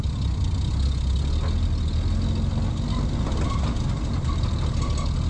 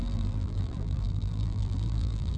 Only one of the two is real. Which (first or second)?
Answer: first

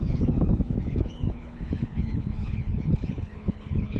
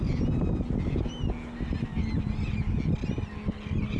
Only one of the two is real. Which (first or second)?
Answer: second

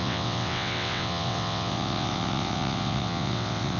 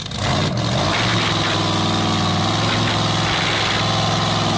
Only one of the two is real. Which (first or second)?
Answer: second